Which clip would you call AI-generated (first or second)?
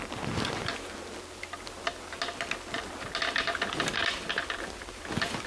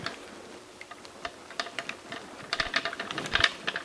second